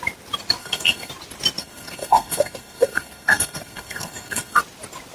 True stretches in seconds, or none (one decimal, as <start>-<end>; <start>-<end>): 0.0-0.6; 1.1-1.6; 4.6-5.1